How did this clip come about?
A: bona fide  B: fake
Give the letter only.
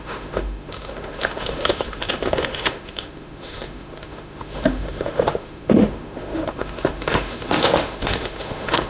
B